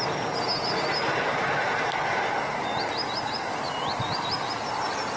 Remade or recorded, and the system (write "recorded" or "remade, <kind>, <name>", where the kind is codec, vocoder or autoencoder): recorded